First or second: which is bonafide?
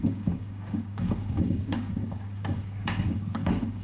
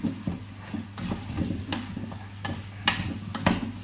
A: second